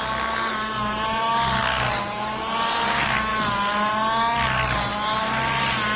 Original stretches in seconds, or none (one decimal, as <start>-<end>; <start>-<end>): 0.0-6.0